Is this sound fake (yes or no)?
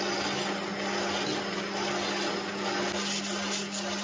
no